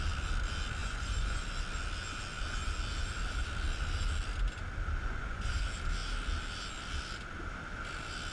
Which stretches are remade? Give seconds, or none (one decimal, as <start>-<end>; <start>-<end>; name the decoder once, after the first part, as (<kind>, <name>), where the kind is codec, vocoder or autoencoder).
0.8-1.4 (vocoder, Vocos); 5.0-5.6

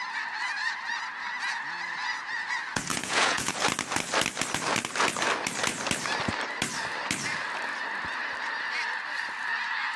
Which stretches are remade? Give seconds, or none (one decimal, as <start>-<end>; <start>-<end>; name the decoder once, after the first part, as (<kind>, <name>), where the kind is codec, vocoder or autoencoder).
2.9-3.5 (vocoder, Vocos)

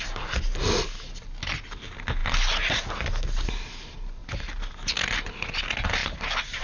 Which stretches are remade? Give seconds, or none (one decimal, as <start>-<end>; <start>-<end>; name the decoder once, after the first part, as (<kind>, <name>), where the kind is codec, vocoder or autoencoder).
none

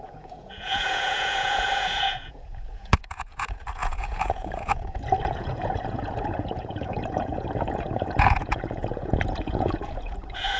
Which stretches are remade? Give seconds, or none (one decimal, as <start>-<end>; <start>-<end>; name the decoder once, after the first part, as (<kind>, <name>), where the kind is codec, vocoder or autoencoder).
0.0-10.6 (vocoder, Vocos)